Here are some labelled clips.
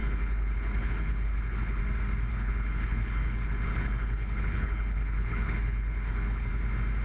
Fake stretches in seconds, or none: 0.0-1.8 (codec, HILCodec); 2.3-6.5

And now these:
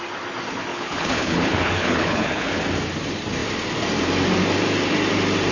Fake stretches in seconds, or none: 0.7-2.6 (codec, HILCodec)

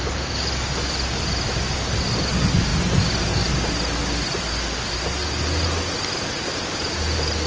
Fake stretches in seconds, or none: none

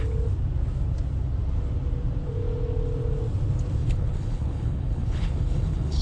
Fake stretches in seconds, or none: 3.8-6.0 (codec, HILCodec)

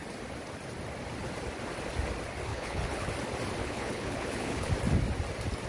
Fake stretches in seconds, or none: 2.5-3.1 (codec, HILCodec); 3.6-4.7